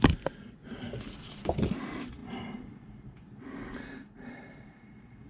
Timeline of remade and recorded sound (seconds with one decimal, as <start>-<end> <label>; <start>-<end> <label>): 0.0-5.3 recorded